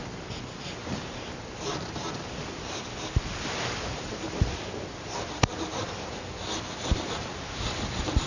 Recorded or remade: recorded